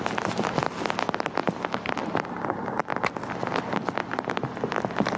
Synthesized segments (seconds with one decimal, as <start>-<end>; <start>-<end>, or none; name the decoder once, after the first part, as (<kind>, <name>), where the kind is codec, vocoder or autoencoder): none